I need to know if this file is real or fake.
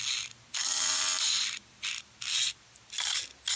real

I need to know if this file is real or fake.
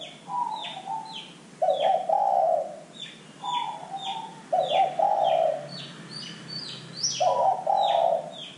real